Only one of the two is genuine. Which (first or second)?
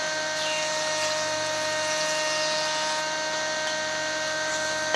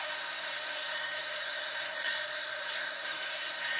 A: first